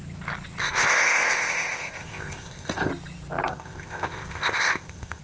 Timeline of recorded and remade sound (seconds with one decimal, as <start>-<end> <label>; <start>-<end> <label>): 0.0-0.6 recorded; 0.6-2.9 remade; 2.9-3.5 recorded; 3.5-5.2 remade